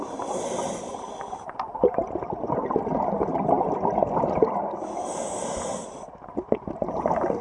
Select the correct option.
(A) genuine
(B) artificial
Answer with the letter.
A